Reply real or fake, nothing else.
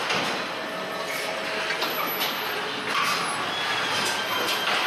real